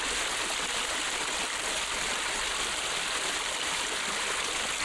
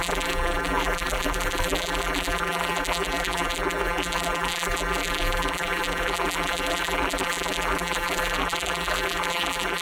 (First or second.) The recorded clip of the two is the first